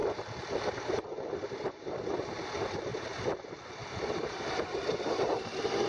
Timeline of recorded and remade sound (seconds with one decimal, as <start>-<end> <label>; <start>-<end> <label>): 0.0-0.7 recorded; 0.7-5.9 remade